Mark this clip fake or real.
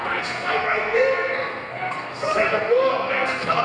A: fake